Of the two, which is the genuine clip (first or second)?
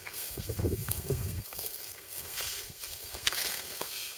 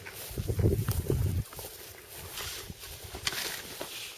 second